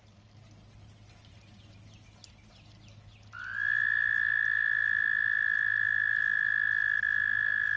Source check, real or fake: real